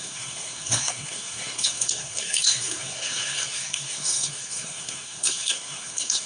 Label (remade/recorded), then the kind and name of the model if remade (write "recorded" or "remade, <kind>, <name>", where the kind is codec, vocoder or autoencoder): remade, codec, SNAC